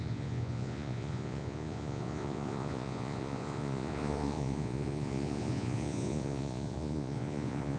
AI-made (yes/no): yes